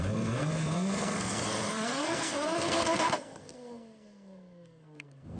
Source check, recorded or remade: remade